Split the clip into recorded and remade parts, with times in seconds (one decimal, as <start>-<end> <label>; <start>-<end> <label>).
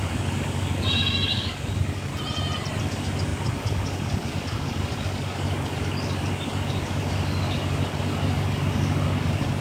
0.0-2.1 remade; 2.1-2.8 recorded; 2.8-9.6 remade